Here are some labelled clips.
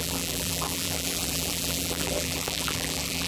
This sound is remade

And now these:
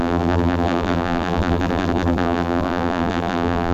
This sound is remade